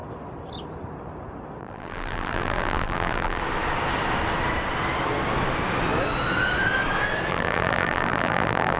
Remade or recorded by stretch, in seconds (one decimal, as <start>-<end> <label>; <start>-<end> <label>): 0.0-1.6 recorded; 1.6-3.4 remade; 3.4-7.3 recorded; 7.3-8.8 remade